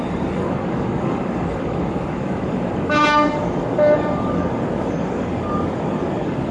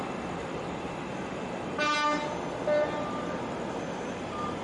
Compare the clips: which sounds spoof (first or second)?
first